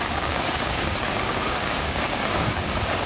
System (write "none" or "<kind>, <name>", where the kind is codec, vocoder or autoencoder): codec, DAC